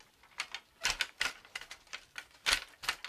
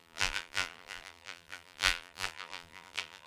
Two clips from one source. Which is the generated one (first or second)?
second